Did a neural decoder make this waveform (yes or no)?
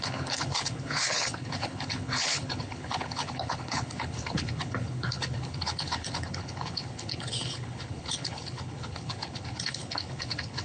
yes